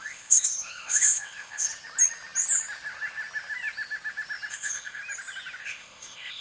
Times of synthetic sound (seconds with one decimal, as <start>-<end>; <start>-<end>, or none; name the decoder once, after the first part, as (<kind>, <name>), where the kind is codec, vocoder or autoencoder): 0.0-1.7 (codec, ZipCodec); 4.5-5.0; 5.6-6.4